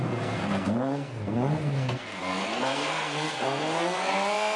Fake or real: fake